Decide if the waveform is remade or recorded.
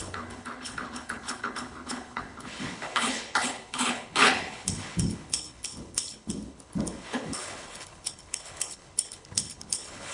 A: remade